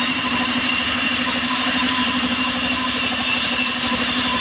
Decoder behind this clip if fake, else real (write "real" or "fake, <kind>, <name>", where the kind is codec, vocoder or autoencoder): fake, vocoder, BigVGAN v2